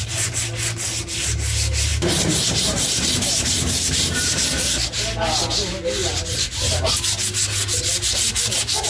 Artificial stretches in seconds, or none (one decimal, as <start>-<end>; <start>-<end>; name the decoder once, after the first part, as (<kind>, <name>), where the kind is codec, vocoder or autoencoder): 1.9-4.9 (vocoder, BigVGAN v2)